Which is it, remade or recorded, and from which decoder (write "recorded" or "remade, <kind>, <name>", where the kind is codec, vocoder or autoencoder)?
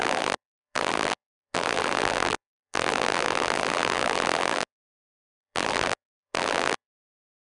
remade, vocoder, BigVGAN v2